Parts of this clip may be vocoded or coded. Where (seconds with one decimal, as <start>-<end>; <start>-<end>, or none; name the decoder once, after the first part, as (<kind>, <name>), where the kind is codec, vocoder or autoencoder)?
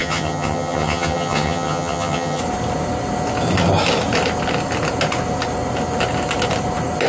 0.0-2.4 (vocoder, HiFi-GAN)